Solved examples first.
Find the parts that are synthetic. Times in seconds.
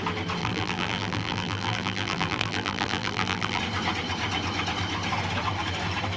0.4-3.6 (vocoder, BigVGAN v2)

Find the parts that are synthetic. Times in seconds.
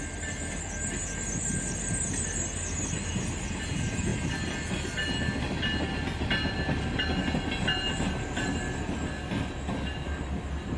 none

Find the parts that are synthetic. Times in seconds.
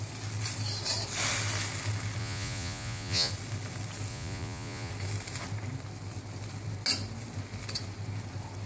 2.2-3.3 (vocoder, Vocos); 4.1-4.9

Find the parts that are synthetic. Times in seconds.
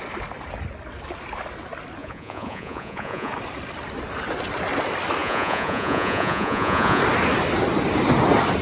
2.0-3.3 (vocoder, Vocos); 5.2-7.0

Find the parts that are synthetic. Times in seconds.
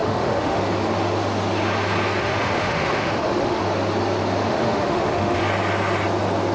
0.0-0.6 (autoencoder, DAC-VAE); 2.2-3.6; 4.5-5.4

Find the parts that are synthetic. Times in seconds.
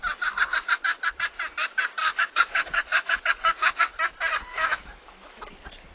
2.0-3.8 (autoencoder, DAC-VAE); 4.5-5.5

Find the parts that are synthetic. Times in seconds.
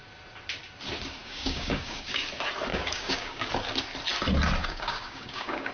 1.2-2.2 (codec, DAC); 2.7-3.5; 4.6-5.7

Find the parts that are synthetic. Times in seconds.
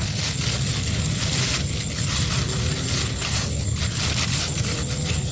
none